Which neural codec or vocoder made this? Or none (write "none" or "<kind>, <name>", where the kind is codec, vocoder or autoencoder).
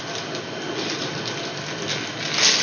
none